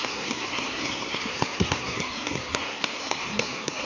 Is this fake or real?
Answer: fake